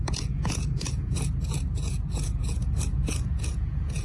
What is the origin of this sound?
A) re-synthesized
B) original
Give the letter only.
A